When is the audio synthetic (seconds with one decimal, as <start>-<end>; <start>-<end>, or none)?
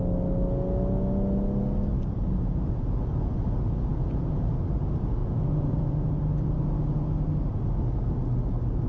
1.9-3.3; 3.9-4.5; 5.2-6.1